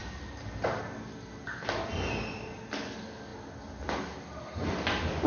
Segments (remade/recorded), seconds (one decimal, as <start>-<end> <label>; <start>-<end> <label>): 0.0-5.3 recorded